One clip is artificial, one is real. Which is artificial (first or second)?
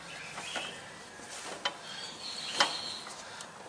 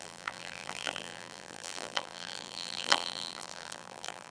second